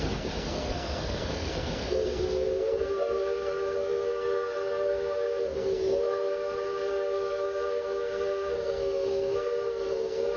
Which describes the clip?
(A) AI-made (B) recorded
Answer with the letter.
A